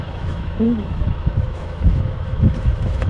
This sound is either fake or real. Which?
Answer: fake